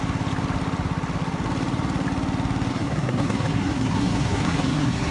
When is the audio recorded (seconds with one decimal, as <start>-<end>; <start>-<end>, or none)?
0.0-2.7